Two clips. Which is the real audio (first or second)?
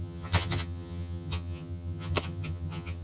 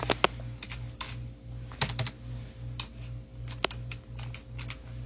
second